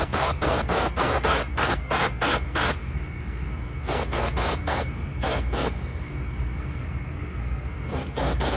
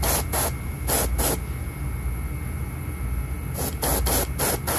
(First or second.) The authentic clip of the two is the second